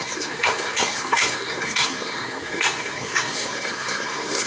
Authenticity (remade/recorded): remade